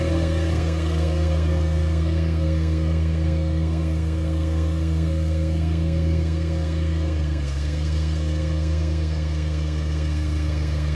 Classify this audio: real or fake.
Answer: fake